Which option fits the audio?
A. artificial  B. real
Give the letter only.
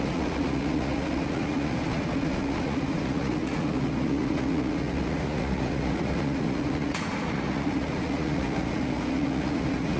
A